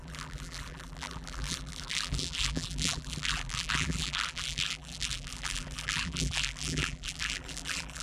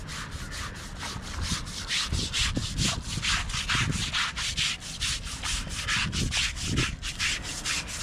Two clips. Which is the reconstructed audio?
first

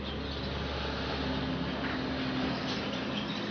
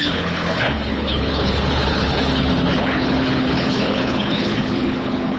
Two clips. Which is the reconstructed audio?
second